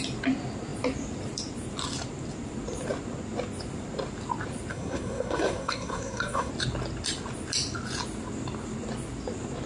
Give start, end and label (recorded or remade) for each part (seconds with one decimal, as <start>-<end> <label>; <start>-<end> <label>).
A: 0.0-4.7 recorded; 4.7-6.5 remade; 6.5-9.7 recorded